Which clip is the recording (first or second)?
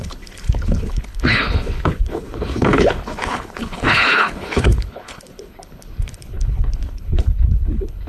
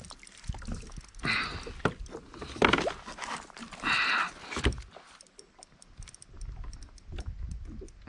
second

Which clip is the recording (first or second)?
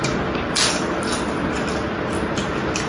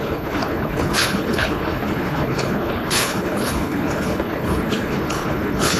first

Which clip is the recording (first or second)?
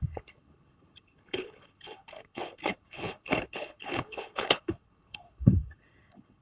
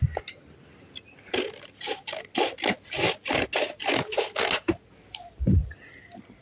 second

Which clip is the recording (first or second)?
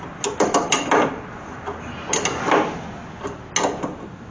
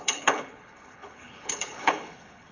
first